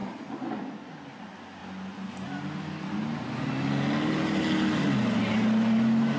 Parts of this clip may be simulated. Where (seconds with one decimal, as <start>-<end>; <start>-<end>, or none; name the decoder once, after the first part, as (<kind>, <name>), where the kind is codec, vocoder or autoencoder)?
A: none